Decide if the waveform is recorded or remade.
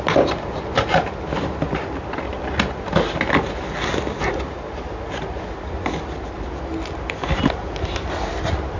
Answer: recorded